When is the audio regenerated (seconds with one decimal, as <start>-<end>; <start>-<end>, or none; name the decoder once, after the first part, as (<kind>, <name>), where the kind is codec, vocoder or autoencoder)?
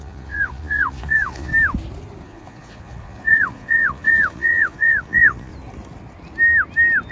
0.0-1.5 (vocoder, Vocos); 2.2-5.5